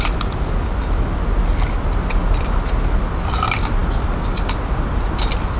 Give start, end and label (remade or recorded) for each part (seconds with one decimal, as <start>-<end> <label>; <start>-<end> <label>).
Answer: 0.0-5.6 recorded